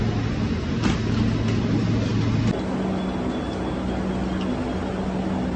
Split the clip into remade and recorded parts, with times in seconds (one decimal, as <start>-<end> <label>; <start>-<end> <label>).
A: 0.0-5.6 recorded